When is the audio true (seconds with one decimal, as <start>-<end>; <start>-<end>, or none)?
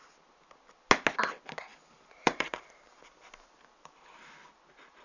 0.0-1.7; 3.0-5.0